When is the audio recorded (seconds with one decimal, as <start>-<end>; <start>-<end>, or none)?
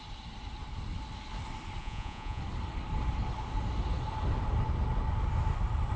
0.0-1.8; 2.4-6.0